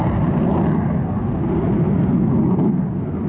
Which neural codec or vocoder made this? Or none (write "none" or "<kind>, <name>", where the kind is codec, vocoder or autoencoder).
none